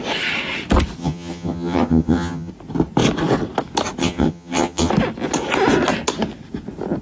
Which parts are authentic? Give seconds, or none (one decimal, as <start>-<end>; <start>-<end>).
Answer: 0.0-1.0; 2.5-4.0; 4.9-7.0